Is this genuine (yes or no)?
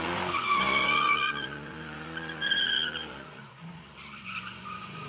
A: no